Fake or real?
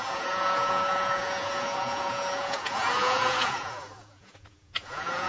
fake